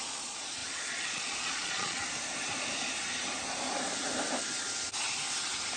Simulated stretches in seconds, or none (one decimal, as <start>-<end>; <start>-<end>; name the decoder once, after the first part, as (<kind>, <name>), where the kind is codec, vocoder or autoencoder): 0.0-2.0 (vocoder, Vocos)